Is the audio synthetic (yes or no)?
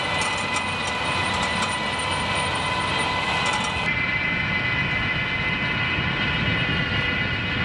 no